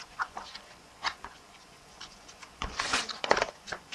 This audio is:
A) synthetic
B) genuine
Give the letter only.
A